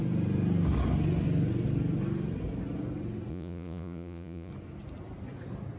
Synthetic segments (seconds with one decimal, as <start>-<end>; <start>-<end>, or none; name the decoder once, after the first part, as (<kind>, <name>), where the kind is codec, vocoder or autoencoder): 3.3-4.5 (vocoder, Vocos)